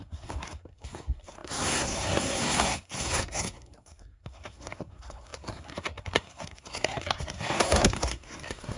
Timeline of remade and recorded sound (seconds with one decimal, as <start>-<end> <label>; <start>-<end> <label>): 0.0-8.8 remade